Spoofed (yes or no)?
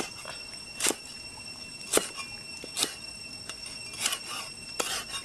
no